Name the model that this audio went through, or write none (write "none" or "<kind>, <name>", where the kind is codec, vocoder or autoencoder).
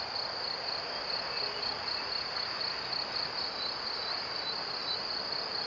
none